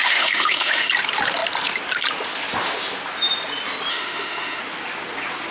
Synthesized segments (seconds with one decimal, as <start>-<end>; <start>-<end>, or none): 0.0-0.9; 3.9-4.6

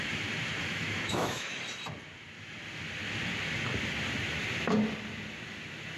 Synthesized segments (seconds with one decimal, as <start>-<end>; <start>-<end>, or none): 0.6-1.6